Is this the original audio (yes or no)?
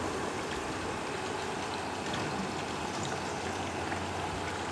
yes